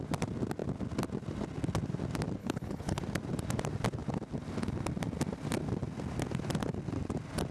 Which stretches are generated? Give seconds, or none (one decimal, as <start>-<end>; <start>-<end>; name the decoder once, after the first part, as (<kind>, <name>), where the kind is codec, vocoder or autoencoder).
2.4-3.0 (codec, HILCodec)